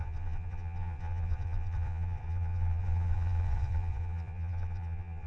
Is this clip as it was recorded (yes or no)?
no